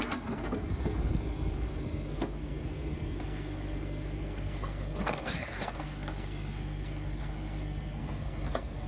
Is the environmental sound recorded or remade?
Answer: remade